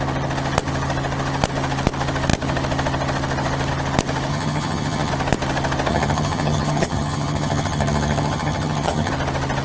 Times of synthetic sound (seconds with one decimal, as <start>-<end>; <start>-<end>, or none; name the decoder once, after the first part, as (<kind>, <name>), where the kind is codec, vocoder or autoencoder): 4.3-5.1 (vocoder, HiFi-GAN); 5.9-9.1